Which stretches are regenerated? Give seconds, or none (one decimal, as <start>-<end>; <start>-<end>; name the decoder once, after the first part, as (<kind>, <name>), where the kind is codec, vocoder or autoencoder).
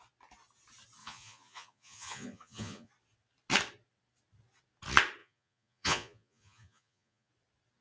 1.0-2.9 (vocoder, Vocos); 5.2-7.3